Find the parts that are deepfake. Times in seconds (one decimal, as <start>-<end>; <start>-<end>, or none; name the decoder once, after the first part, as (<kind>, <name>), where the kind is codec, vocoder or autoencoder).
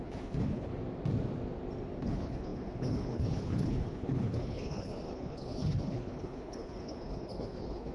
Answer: 0.0-0.7 (codec, HILCodec); 2.0-7.9